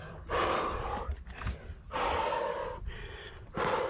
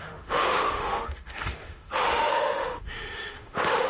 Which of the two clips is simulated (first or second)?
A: second